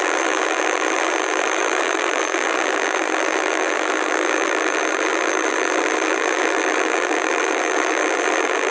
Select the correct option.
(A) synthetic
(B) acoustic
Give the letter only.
A